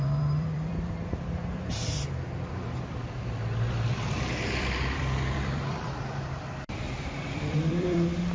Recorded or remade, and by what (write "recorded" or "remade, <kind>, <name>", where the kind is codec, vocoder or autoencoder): remade, vocoder, BigVGAN v2